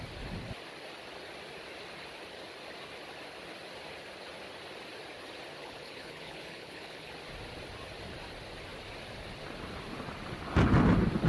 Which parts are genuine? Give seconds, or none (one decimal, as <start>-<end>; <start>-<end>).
0.0-5.6; 7.1-11.3